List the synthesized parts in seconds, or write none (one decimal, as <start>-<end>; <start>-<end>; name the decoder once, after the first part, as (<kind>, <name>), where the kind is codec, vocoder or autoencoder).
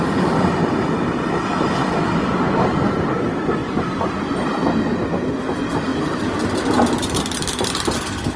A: 0.0-1.8 (vocoder, BigVGAN v2); 2.9-3.6; 5.3-8.4